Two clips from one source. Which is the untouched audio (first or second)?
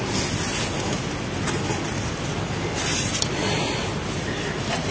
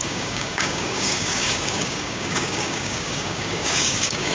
first